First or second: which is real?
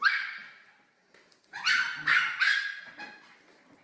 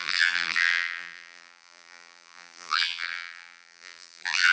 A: first